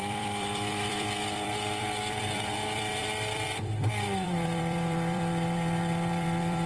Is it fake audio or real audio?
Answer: fake